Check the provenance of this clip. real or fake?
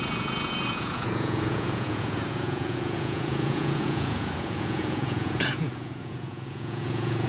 fake